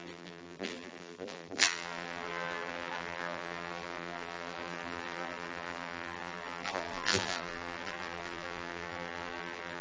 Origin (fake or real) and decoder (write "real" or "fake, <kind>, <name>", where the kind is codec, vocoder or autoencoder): fake, vocoder, BigVGAN v2